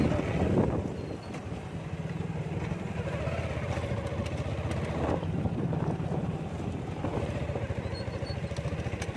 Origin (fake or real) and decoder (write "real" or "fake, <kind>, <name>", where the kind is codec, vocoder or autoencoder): real